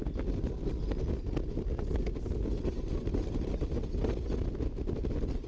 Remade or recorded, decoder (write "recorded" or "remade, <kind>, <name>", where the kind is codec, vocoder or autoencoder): recorded